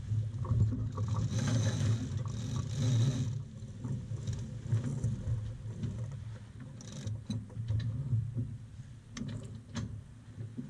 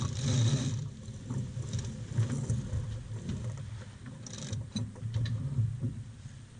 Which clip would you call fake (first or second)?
second